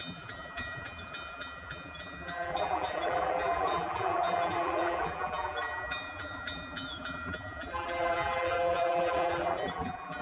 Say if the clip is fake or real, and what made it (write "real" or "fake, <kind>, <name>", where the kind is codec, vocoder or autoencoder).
fake, vocoder, BigVGAN v2